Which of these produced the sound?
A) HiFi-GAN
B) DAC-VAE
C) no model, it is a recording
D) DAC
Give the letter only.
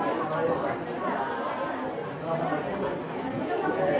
C